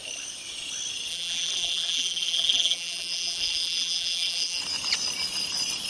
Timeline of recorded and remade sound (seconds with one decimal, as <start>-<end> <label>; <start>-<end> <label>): 0.0-1.1 recorded; 1.1-4.6 remade; 4.6-5.9 recorded